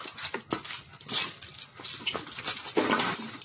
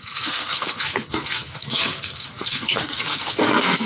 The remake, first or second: second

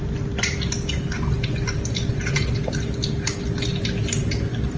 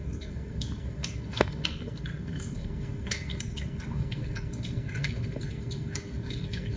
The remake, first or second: second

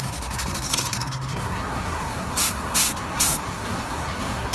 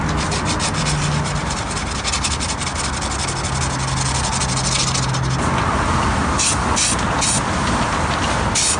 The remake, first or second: first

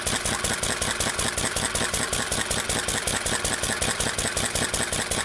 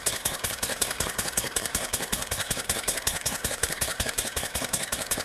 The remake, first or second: second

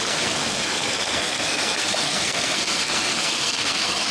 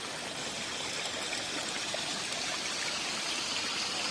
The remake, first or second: first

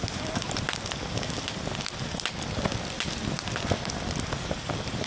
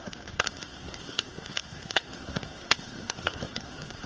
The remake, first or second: second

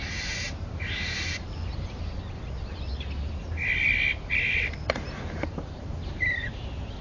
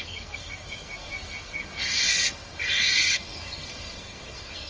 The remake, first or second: second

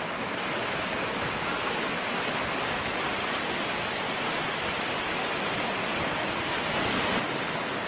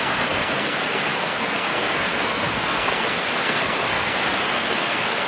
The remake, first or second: second